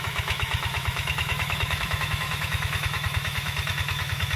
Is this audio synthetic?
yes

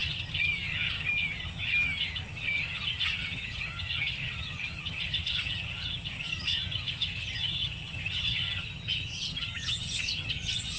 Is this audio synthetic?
yes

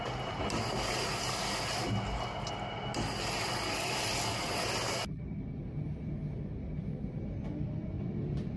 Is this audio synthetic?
no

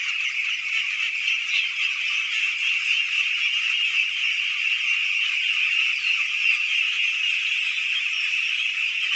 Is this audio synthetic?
no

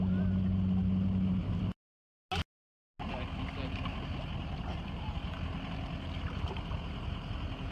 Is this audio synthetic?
no